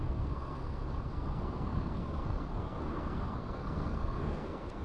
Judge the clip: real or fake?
fake